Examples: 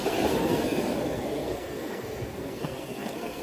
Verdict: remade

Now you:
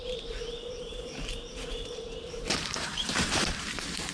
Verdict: remade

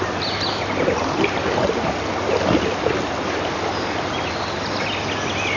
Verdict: recorded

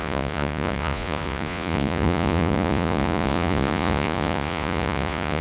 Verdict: remade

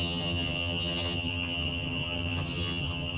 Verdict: remade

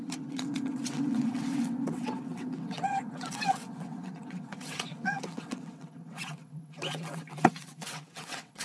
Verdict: remade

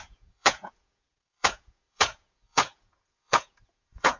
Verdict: remade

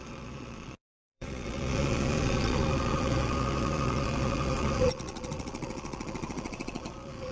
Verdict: remade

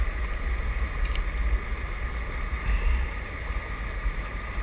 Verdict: recorded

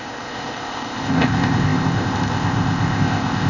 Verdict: remade